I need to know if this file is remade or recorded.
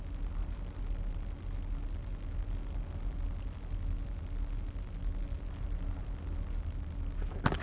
recorded